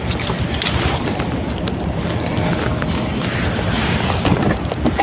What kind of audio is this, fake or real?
real